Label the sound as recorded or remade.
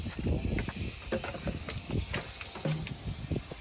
recorded